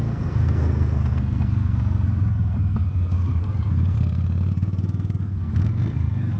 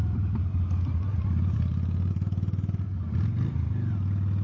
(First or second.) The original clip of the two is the second